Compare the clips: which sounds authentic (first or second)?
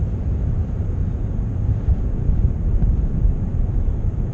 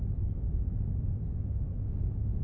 second